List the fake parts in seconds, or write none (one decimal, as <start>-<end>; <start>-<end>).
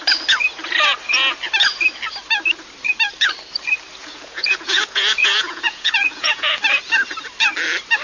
4.0-6.5